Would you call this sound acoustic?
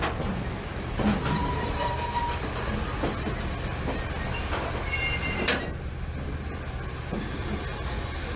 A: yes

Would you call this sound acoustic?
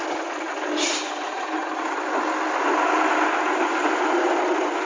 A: yes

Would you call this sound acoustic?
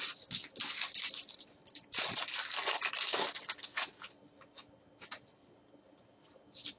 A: yes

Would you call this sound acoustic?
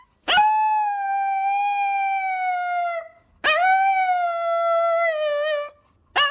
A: yes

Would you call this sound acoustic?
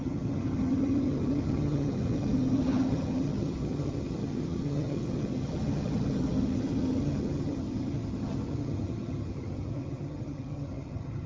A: no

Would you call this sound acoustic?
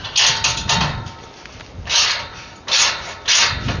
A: yes